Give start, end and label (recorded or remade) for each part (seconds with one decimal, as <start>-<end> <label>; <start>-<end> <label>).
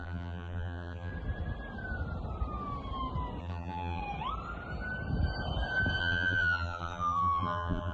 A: 0.0-1.1 remade; 1.1-3.4 recorded; 3.4-4.0 remade; 4.0-6.0 recorded; 6.0-7.9 remade